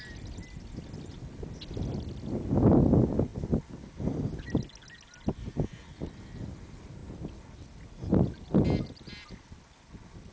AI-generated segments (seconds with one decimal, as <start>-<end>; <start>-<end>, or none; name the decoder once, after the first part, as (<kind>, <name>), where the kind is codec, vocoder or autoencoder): none